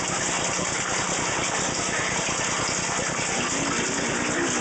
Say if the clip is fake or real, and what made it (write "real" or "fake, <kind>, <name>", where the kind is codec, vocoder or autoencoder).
real